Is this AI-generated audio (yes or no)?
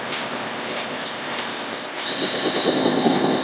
yes